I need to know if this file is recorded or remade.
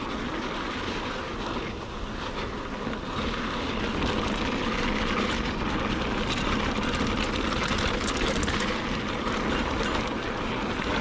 recorded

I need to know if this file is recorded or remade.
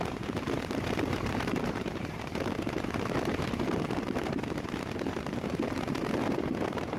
remade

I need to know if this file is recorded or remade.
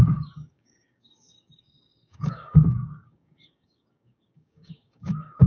remade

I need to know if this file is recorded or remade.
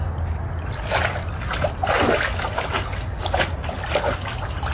recorded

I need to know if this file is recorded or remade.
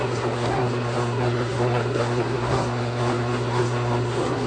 remade